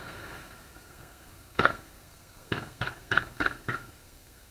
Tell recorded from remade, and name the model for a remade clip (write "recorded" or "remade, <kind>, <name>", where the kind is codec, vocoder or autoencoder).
remade, codec, SNAC